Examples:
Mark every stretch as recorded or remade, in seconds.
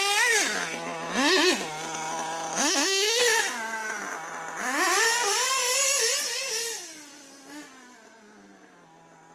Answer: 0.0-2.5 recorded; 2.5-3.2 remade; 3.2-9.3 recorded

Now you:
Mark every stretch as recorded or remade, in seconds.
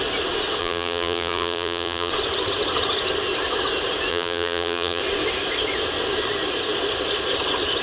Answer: 0.0-0.6 recorded; 0.6-2.1 remade; 2.1-4.1 recorded; 4.1-5.0 remade; 5.0-7.8 recorded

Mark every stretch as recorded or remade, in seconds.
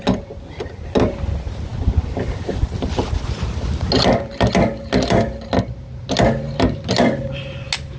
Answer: 0.0-8.0 recorded